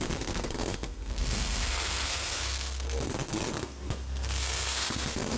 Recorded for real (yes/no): no